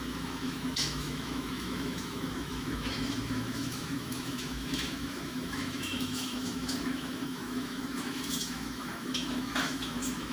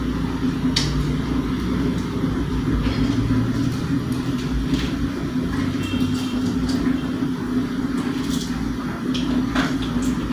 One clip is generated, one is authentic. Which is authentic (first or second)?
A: second